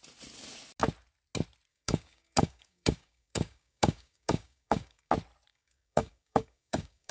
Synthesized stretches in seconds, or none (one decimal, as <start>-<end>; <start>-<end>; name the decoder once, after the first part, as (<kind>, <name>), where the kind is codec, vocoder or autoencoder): 1.7-5.1 (codec, DAC); 5.5-7.1